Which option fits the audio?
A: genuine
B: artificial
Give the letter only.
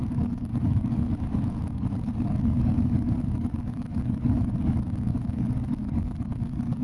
B